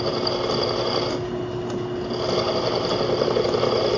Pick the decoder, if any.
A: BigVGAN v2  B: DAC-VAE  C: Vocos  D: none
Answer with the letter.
D